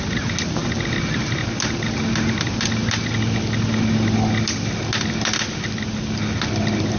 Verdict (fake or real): real